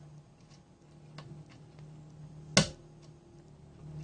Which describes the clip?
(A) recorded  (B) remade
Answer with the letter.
A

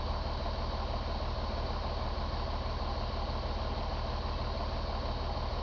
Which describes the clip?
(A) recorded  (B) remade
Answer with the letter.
A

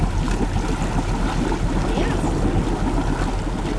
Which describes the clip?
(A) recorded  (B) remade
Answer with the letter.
A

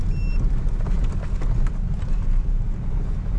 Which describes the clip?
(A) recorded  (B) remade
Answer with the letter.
A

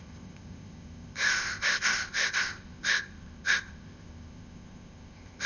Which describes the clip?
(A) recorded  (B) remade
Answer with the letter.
B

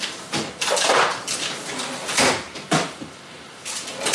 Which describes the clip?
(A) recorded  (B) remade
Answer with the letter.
B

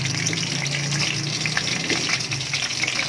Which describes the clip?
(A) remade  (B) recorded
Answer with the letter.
B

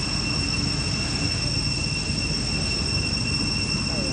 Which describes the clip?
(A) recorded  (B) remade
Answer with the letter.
A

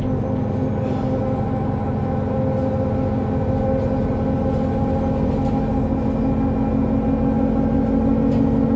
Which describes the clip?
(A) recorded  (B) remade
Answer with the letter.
A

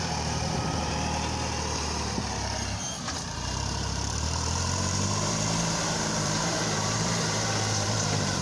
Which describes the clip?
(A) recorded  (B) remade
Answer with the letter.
B